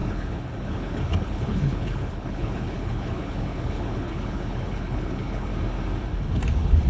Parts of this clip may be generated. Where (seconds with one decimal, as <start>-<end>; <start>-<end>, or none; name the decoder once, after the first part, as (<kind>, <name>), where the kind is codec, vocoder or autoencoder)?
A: 0.0-5.5 (codec, HILCodec); 6.5-6.9